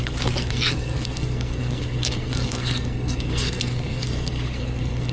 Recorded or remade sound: remade